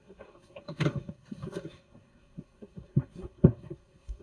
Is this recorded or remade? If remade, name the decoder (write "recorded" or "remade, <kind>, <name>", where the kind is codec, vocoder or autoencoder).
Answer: remade, codec, SNAC